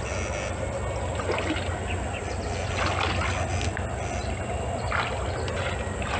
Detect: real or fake real